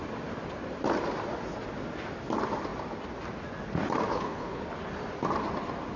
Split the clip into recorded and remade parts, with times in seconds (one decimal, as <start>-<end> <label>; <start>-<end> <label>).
0.0-4.1 recorded; 4.1-4.6 remade; 4.6-6.0 recorded